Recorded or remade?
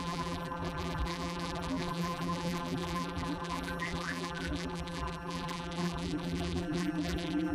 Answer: remade